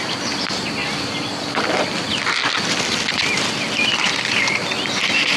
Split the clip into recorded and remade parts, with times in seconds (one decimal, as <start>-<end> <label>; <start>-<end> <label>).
0.0-5.4 recorded